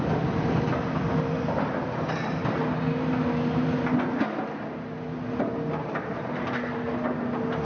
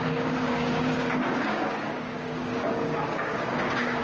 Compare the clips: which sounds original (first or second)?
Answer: first